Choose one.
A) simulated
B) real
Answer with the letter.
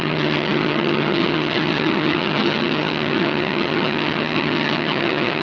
A